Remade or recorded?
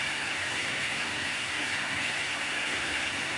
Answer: remade